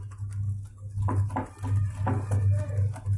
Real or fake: real